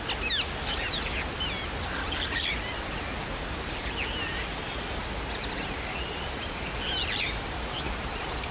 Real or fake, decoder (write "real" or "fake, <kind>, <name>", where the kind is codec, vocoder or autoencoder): real